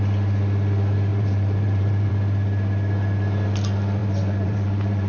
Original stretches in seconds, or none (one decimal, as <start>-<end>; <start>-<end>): 0.0-1.1; 2.1-4.0